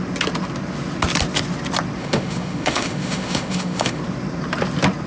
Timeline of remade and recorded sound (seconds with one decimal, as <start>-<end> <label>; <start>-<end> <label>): 0.0-2.0 recorded; 2.0-4.0 remade; 4.0-5.1 recorded